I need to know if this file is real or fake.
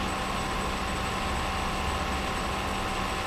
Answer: real